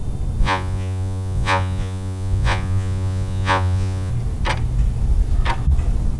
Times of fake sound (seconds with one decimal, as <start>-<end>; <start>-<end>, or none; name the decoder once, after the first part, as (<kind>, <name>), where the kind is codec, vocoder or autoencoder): 0.4-4.1 (vocoder, Vocos)